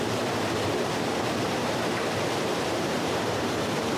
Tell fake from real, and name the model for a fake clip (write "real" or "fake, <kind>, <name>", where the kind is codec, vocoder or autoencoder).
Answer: fake, vocoder, BigVGAN v2